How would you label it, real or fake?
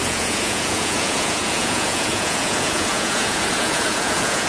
fake